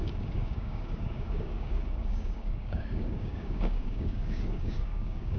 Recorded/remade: remade